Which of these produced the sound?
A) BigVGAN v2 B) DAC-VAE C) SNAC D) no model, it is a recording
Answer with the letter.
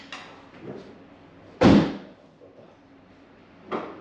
D